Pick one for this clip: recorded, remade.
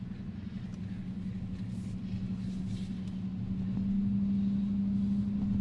recorded